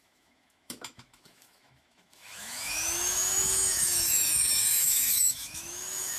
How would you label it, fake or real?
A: fake